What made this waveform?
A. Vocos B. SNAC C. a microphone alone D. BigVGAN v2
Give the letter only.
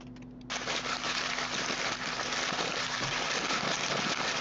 C